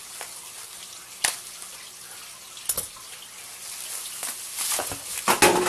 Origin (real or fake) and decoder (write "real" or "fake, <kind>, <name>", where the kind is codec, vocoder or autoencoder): real